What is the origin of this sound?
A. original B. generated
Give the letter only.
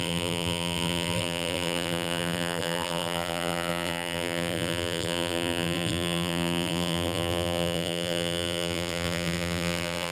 B